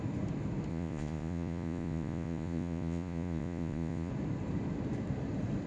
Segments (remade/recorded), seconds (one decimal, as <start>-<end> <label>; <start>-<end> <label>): 0.0-0.7 recorded; 0.7-4.1 remade; 4.1-5.7 recorded